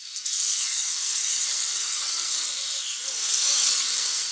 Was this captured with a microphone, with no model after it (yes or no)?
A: no